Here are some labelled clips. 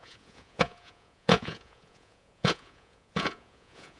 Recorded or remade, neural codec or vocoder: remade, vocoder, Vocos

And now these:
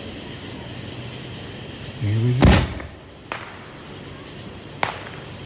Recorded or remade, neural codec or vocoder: recorded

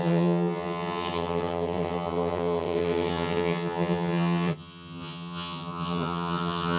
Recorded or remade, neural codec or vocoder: remade, vocoder, HiFi-GAN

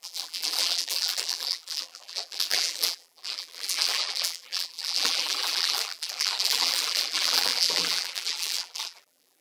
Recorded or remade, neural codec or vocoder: remade, vocoder, BigVGAN v2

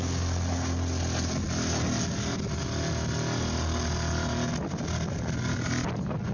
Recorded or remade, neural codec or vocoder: recorded